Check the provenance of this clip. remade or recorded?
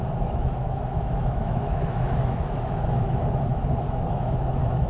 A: remade